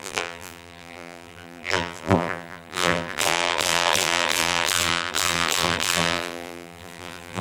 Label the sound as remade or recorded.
remade